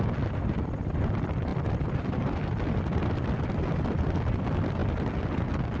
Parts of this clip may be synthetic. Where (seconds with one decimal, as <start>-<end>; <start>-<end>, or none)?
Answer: 0.0-1.5; 3.4-4.8